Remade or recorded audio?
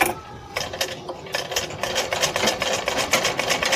recorded